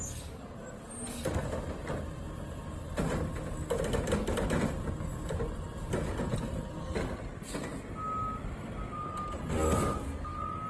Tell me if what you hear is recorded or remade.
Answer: recorded